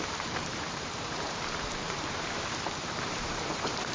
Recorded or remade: remade